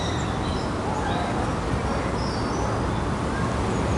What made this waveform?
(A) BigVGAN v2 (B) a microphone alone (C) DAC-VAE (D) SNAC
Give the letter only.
B